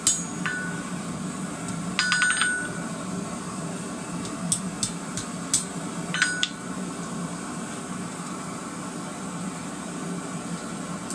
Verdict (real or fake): real